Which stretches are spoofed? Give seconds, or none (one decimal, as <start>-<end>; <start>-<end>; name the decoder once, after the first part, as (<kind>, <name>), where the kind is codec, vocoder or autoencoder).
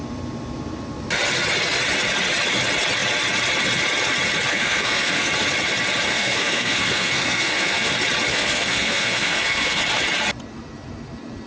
4.5-5.3 (codec, SNAC); 6.1-7.9; 8.3-9.8